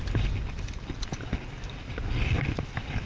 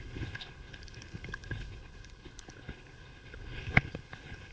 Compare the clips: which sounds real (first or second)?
first